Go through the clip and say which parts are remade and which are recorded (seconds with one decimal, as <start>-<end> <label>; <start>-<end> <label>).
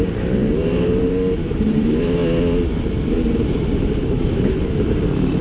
0.0-2.2 remade; 2.2-4.0 recorded; 4.0-5.4 remade